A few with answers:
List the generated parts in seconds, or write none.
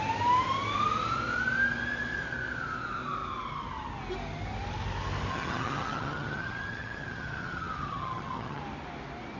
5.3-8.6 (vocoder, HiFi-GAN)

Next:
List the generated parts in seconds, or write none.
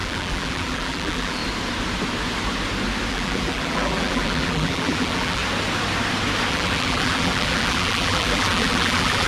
0.0-1.4 (vocoder, BigVGAN v2); 3.1-5.4; 6.5-9.3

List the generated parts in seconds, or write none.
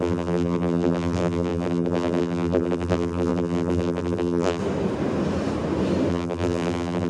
0.0-4.6 (vocoder, BigVGAN v2); 6.1-7.1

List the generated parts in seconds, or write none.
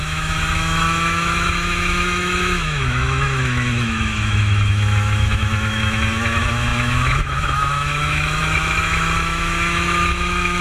0.0-10.6 (autoencoder, DAC-VAE)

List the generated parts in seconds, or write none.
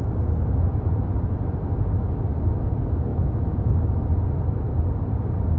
3.1-3.9 (autoencoder, DAC-VAE)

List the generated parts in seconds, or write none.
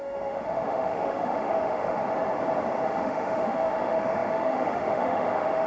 0.0-2.0 (autoencoder, DAC-VAE); 2.8-5.7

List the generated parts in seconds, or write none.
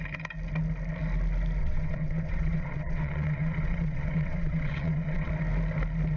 1.6-5.3 (vocoder, WaveNeXt)